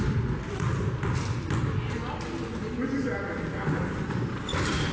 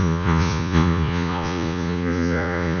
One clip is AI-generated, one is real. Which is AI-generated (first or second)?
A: second